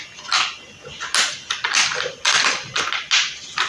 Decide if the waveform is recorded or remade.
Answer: recorded